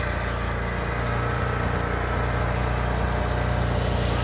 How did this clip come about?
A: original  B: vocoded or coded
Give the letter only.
A